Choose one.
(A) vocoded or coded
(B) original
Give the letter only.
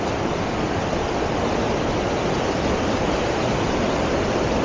B